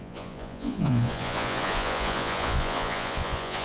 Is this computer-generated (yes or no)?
yes